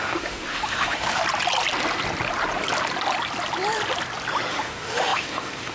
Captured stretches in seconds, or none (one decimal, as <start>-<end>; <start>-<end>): 1.2-4.5